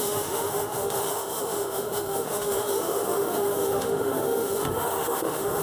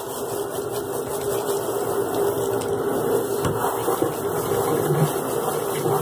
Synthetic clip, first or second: first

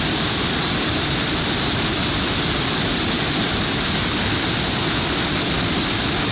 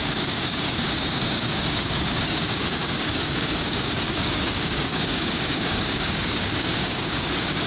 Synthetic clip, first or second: second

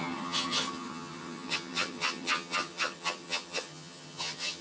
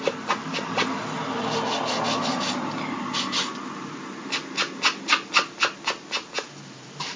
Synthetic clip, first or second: first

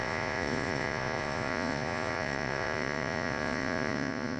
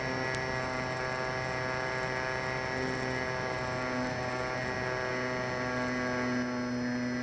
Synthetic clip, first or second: first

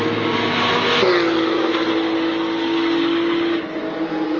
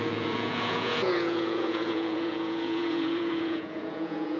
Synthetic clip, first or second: second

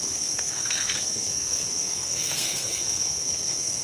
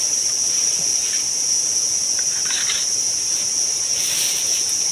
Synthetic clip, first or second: first